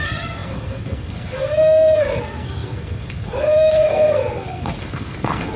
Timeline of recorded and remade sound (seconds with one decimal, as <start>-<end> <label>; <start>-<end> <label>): 0.0-5.6 remade

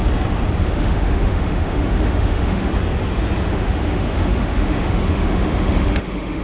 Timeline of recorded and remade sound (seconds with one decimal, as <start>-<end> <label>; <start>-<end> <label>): 0.0-0.6 recorded; 0.6-2.7 remade; 2.7-3.5 recorded; 3.5-6.4 remade